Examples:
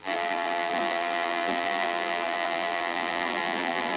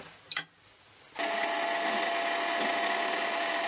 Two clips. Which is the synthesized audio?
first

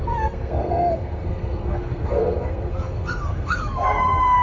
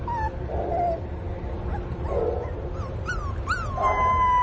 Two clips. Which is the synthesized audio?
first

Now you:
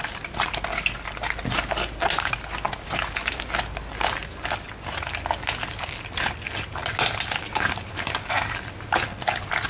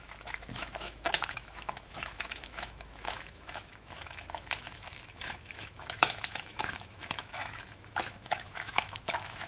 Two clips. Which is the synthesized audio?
second